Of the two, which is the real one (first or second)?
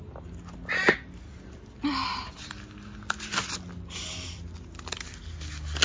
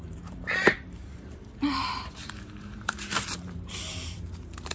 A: first